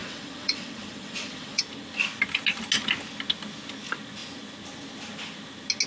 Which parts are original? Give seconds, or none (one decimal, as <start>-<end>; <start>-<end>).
1.6-5.9